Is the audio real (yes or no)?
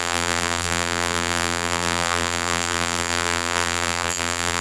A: no